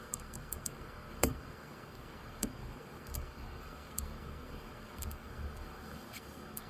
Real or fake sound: fake